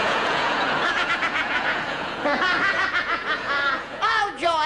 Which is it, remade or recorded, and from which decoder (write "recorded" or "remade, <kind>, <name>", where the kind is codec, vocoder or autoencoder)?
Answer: remade, vocoder, Vocos